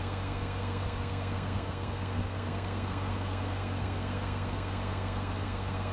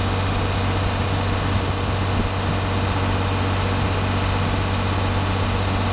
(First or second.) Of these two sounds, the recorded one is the second